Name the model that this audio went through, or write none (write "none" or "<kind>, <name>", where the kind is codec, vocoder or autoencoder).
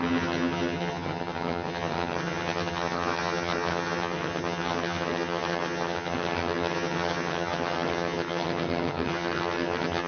vocoder, HiFi-GAN